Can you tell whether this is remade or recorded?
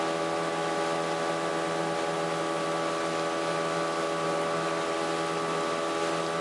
recorded